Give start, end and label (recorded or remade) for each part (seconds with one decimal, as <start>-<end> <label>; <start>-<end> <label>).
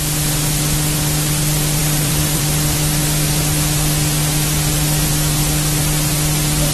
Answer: 0.0-1.8 recorded; 1.8-2.4 remade; 2.4-6.7 recorded